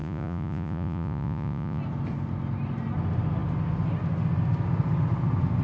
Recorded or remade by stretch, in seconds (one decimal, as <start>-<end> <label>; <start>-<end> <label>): 0.0-1.8 remade; 1.8-5.6 recorded